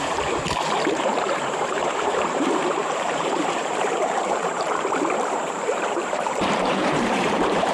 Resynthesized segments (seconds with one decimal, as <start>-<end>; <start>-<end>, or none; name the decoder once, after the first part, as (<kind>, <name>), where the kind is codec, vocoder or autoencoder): 0.0-7.7 (vocoder, BigVGAN v2)